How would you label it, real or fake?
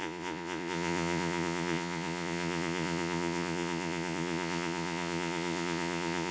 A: fake